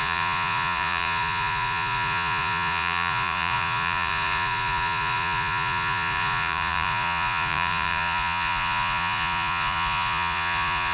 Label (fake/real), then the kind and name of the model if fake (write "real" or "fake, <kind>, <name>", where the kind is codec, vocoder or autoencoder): fake, vocoder, Vocos